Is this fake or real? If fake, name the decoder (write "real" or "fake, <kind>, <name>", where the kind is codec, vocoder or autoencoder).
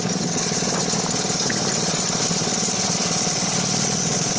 real